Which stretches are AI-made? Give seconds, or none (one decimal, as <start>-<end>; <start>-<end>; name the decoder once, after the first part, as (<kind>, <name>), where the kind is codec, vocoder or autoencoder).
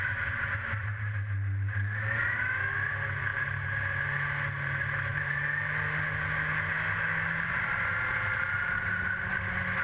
none